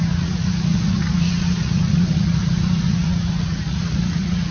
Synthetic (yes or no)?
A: yes